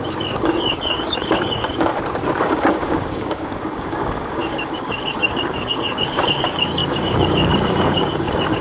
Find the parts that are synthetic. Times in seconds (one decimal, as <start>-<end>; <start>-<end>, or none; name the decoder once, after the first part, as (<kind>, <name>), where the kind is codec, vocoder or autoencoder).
0.0-1.9 (codec, DAC); 2.4-8.6